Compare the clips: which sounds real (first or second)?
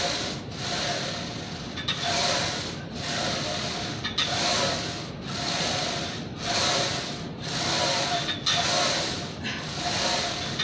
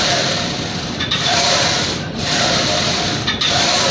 first